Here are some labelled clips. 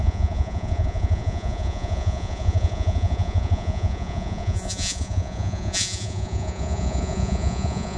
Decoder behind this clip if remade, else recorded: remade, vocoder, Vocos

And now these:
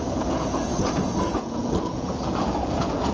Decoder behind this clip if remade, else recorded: remade, vocoder, Vocos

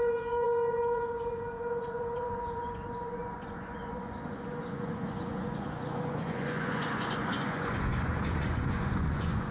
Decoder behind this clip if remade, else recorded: remade, vocoder, Vocos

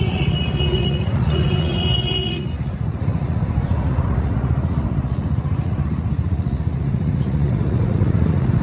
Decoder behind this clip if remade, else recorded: remade, vocoder, Vocos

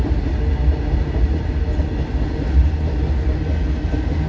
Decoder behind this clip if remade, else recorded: recorded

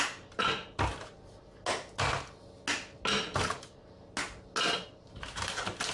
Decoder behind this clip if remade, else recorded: recorded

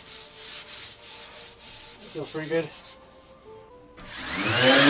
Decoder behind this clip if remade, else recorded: recorded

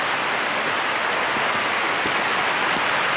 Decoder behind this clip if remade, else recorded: recorded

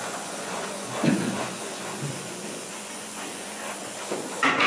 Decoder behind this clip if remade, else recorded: remade, vocoder, Vocos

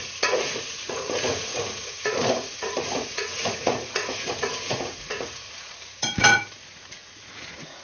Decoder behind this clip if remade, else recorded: remade, vocoder, Vocos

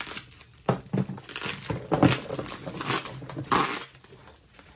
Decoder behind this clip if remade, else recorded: recorded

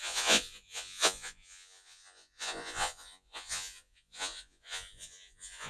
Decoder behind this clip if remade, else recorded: remade, vocoder, Vocos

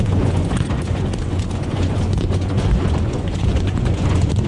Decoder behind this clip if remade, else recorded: remade, vocoder, Vocos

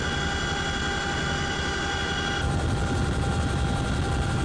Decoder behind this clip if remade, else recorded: recorded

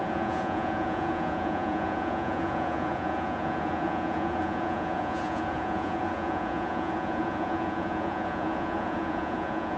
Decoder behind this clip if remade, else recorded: remade, vocoder, Vocos